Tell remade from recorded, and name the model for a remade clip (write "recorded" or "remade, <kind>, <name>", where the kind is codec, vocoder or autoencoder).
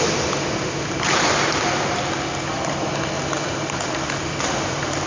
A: recorded